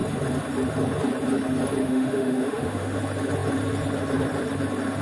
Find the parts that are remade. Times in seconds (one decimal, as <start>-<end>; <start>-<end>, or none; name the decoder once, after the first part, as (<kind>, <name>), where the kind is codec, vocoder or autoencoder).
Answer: 1.8-3.0 (autoencoder, DAC-VAE)